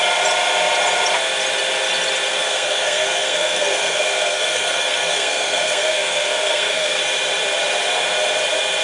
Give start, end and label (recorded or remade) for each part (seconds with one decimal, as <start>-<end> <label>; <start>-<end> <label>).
0.0-2.3 recorded; 2.3-7.0 remade; 7.0-8.8 recorded